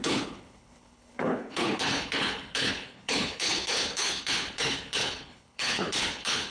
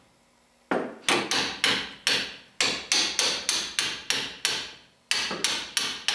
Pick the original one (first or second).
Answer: second